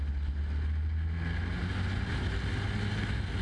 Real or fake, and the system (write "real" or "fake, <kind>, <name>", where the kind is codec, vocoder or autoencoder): real